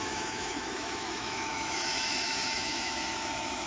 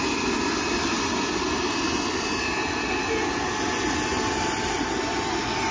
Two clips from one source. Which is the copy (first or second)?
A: first